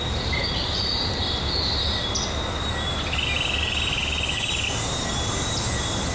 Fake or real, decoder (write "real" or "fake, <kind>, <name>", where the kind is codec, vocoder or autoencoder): real